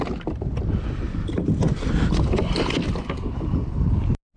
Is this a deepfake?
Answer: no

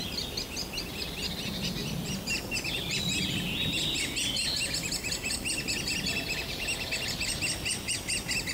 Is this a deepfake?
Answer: no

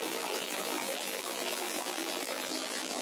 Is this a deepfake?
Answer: yes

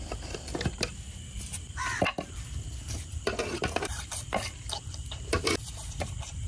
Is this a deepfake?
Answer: yes